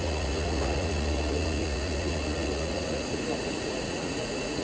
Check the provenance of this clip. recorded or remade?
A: remade